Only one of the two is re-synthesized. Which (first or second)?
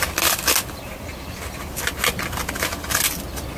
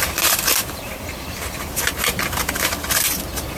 second